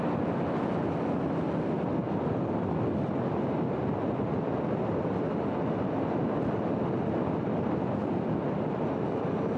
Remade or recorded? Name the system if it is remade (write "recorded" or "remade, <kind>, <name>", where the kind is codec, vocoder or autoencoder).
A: recorded